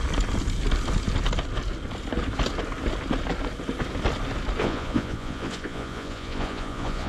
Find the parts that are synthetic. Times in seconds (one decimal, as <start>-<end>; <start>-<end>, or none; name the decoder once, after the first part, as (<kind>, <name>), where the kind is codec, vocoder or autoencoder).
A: 4.6-7.1 (vocoder, Vocos)